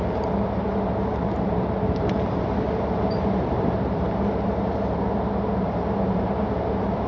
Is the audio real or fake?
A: fake